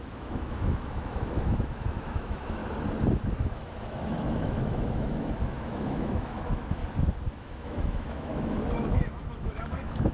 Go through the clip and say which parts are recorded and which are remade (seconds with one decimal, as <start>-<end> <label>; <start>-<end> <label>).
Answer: 0.0-2.6 remade; 2.6-3.4 recorded; 3.4-6.8 remade; 6.8-7.3 recorded; 7.3-10.1 remade